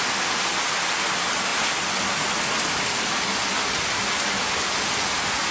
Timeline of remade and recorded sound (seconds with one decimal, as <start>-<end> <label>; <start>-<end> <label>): 0.0-5.5 recorded